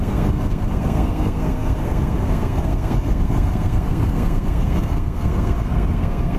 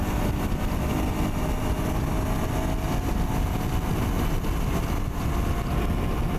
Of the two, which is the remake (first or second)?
first